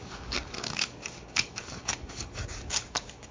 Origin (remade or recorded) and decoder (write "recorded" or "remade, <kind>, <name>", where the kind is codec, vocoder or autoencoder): remade, codec, DAC